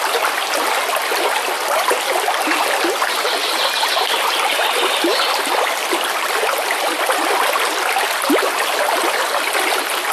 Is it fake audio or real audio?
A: real